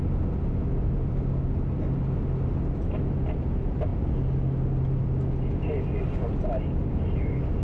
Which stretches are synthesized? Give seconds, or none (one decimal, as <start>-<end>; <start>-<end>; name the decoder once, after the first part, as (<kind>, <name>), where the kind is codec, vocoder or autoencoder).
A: none